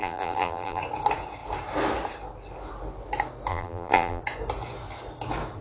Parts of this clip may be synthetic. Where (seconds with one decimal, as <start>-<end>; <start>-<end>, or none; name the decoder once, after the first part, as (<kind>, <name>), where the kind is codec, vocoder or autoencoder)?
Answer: 0.0-0.8 (vocoder, BigVGAN v2); 3.5-4.2